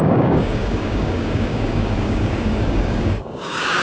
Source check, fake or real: fake